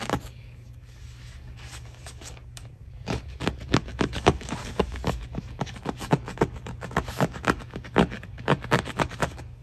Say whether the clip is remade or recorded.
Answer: remade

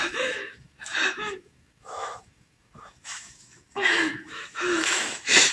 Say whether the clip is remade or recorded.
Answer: remade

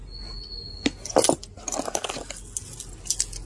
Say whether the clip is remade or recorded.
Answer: recorded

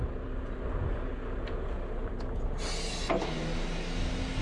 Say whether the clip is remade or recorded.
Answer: recorded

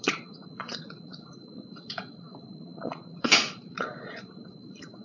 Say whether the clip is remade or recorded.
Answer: remade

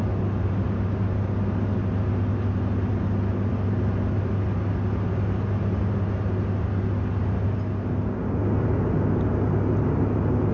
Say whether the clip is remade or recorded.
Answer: recorded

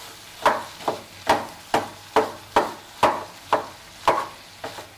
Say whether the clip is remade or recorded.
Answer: recorded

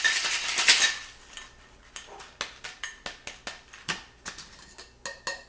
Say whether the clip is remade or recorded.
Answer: recorded